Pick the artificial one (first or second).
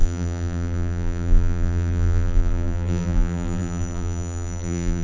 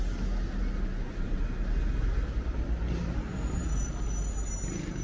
first